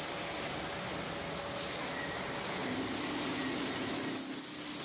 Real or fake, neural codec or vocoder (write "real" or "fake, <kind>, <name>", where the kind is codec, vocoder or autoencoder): real